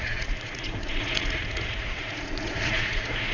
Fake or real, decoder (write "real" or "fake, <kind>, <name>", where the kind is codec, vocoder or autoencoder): fake, vocoder, Vocos